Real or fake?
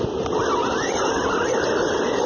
real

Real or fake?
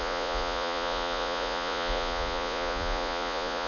fake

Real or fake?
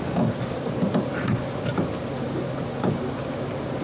real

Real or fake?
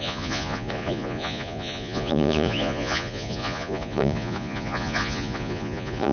fake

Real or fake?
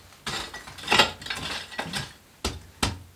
real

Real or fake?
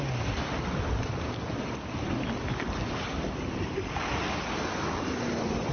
real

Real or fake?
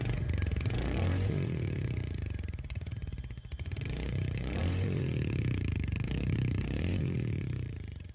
fake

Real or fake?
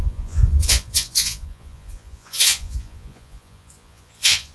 fake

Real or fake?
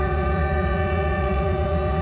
fake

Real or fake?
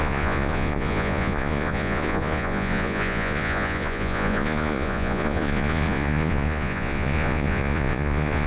fake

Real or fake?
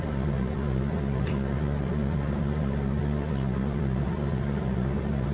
fake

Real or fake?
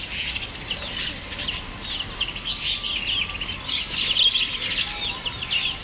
real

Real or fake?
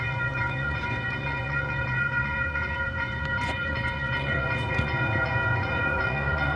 fake